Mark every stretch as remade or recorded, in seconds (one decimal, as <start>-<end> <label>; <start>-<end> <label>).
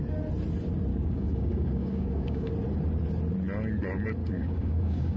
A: 0.0-0.9 recorded; 0.9-2.5 remade; 2.5-4.2 recorded; 4.2-5.2 remade